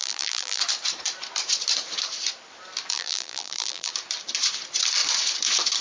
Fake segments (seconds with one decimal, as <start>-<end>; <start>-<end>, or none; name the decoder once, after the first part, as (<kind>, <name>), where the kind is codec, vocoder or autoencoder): 0.0-0.6 (vocoder, BigVGAN v2); 2.9-3.9